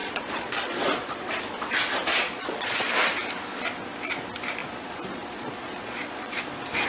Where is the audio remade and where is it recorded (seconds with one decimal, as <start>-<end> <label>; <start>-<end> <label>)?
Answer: 0.0-1.3 remade; 1.3-2.1 recorded; 2.1-2.9 remade; 2.9-4.6 recorded; 4.6-6.4 remade; 6.4-6.9 recorded